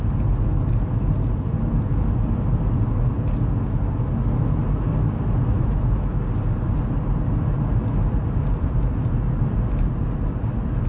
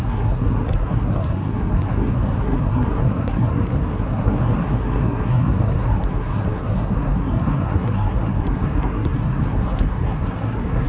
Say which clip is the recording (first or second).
first